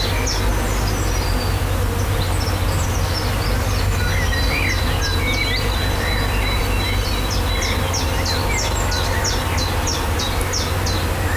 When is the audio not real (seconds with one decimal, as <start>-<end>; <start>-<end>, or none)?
none